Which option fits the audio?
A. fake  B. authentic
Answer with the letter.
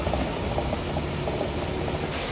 B